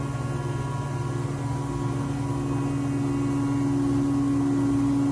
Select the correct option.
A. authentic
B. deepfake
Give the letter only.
A